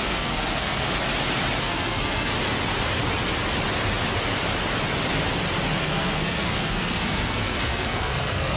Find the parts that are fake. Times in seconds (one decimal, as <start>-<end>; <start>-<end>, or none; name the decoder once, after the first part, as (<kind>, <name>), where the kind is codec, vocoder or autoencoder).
0.0-0.9 (codec, SNAC); 1.6-2.3; 5.8-8.6